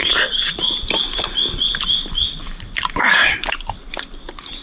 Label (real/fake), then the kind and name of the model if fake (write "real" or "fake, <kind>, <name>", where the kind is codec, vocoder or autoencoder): real